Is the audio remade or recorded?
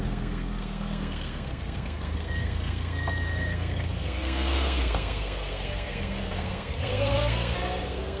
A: remade